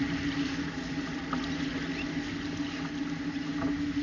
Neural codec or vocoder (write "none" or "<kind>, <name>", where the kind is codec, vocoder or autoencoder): none